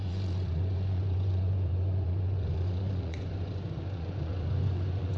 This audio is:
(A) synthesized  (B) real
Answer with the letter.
A